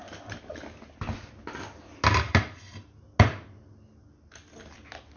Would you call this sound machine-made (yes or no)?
no